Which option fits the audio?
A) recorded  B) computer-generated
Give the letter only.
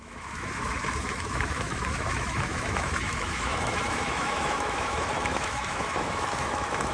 B